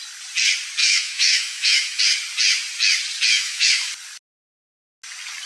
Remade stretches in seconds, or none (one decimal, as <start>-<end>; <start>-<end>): 0.8-2.0; 3.3-3.9

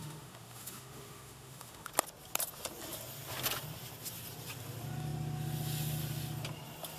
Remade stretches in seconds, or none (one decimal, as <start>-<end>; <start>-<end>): 0.0-1.9

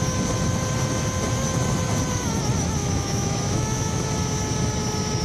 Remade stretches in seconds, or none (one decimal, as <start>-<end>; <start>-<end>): 2.8-4.0

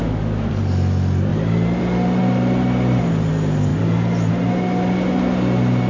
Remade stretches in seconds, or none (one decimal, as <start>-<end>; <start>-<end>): 0.0-0.5

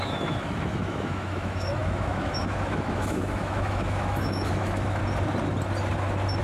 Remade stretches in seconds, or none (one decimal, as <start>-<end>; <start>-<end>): 0.0-5.0

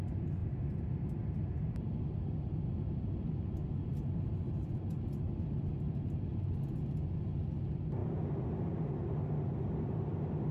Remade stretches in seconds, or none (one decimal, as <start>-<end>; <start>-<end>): none

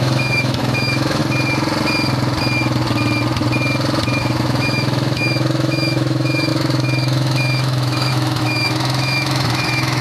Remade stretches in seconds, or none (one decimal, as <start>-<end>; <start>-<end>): 0.0-1.2; 4.2-10.0